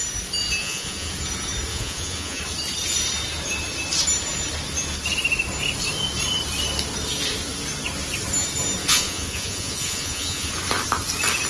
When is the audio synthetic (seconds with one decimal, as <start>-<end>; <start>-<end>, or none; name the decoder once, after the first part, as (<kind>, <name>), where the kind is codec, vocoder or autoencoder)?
0.6-1.1 (vocoder, Vocos); 1.7-2.4; 8.8-10.5